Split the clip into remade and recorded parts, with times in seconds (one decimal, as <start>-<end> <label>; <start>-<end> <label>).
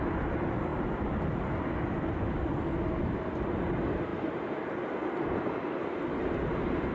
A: 0.0-6.9 recorded